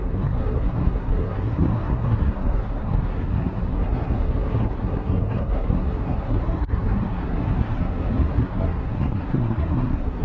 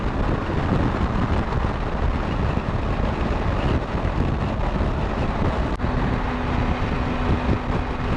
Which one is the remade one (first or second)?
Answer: first